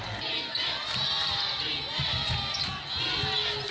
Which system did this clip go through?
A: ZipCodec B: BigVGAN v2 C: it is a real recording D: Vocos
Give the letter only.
C